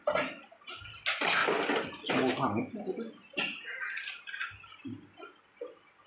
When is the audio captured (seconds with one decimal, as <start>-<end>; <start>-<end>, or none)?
0.0-1.4; 3.4-6.1